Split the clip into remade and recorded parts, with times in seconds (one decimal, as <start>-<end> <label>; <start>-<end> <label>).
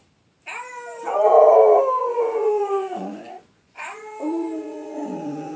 0.0-2.0 recorded; 2.0-5.6 remade